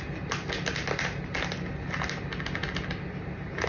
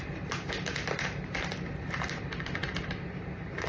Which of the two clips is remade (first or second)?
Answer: second